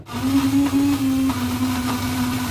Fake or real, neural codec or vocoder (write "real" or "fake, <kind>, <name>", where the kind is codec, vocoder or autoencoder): real